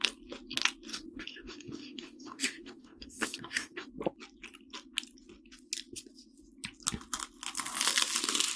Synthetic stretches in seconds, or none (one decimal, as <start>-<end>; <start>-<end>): 0.9-3.9